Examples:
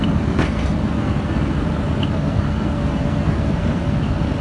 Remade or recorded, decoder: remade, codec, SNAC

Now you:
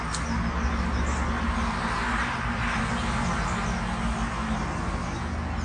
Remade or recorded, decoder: recorded